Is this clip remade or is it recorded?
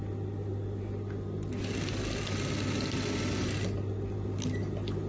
recorded